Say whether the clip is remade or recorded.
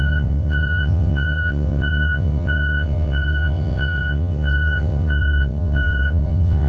remade